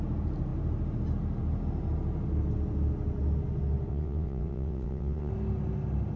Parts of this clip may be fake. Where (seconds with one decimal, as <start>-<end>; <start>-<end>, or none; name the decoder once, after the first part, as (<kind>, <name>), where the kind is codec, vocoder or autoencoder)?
3.9-5.3 (vocoder, WaveNeXt)